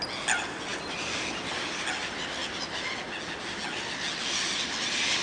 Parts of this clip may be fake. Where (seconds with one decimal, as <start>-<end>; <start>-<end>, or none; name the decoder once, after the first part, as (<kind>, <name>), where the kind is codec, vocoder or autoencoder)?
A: none